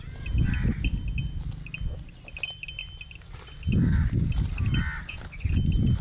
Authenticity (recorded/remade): recorded